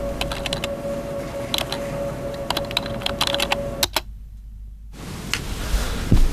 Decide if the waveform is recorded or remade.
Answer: recorded